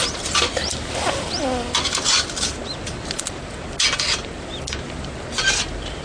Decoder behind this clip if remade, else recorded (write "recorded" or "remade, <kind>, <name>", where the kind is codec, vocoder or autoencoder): recorded